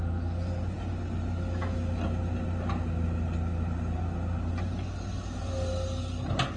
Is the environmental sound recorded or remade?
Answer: recorded